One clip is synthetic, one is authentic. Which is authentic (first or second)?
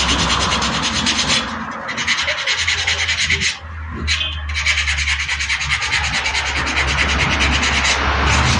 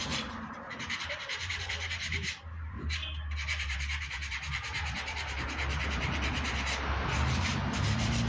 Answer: first